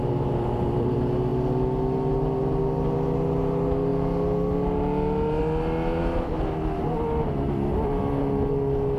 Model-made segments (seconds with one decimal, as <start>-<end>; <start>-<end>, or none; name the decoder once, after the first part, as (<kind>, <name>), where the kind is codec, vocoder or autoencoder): none